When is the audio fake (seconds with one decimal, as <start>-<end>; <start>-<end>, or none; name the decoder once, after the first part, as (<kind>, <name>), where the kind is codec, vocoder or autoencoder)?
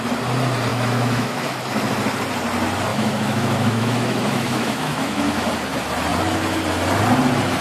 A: 0.7-1.6 (autoencoder, DAC-VAE); 2.9-5.5